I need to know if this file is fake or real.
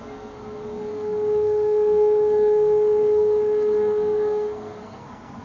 fake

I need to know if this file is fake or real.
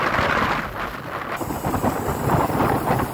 real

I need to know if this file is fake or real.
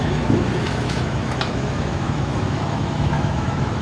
fake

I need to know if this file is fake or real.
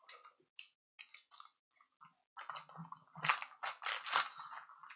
real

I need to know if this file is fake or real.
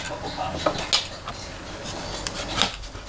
real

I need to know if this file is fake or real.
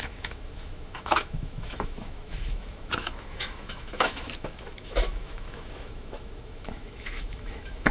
fake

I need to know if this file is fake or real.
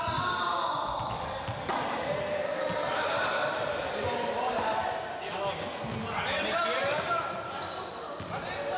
real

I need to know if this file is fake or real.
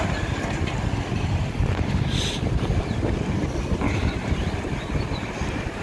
real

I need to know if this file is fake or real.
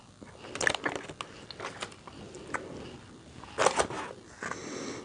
real